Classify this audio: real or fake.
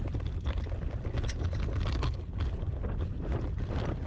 real